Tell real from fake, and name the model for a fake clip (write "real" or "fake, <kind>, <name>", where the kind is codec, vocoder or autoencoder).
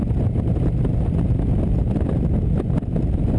real